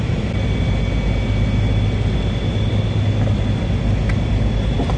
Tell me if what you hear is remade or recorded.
recorded